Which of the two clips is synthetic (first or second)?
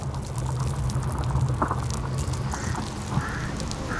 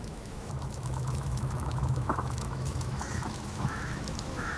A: second